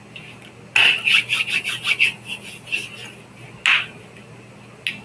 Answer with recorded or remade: recorded